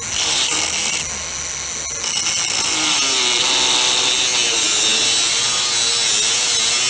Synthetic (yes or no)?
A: no